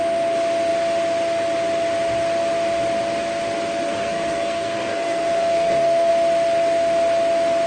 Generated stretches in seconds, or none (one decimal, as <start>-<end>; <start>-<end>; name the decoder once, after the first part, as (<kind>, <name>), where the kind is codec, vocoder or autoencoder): 3.8-6.1 (codec, SNAC)